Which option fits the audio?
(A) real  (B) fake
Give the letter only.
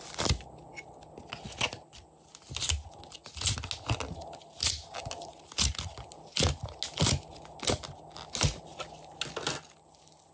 A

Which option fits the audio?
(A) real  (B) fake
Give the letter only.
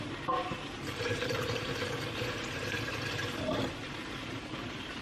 B